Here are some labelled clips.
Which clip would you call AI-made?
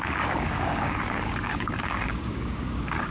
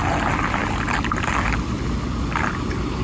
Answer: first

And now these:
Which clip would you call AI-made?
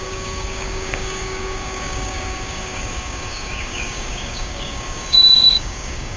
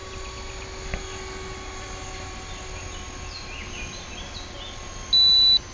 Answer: first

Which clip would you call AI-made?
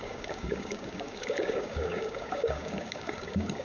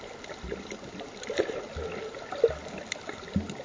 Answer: first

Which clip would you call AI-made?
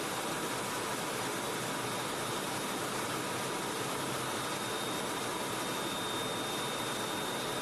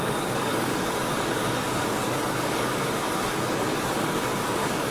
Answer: second